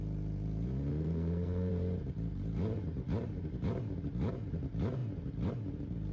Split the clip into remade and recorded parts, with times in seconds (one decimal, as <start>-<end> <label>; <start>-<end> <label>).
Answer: 0.0-0.9 recorded; 0.9-1.7 remade; 1.7-6.1 recorded